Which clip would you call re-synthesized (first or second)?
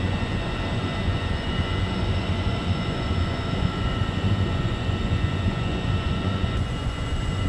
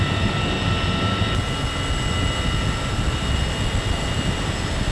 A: first